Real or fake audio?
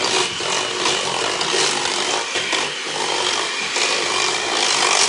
real